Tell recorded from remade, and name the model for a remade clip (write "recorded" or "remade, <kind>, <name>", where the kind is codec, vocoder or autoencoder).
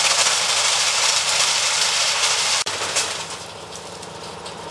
remade, vocoder, BigVGAN v2